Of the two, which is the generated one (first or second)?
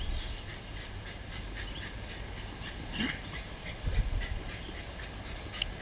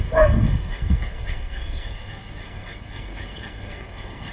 second